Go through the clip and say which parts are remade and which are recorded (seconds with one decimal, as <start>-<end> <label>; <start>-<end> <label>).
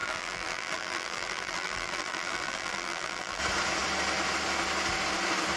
0.0-3.4 remade; 3.4-5.6 recorded